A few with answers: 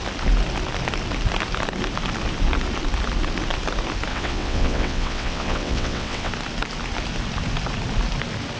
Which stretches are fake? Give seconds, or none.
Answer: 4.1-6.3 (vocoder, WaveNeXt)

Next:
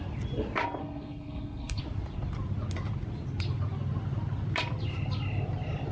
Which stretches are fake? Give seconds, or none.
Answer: 0.8-1.8 (codec, SNAC)

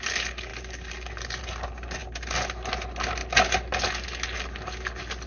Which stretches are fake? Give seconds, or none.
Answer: none

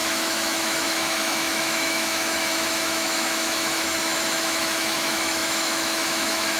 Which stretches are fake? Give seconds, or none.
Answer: 0.0-6.6 (autoencoder, DAC-VAE)